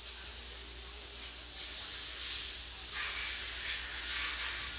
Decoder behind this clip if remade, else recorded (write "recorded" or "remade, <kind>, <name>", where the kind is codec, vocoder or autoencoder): recorded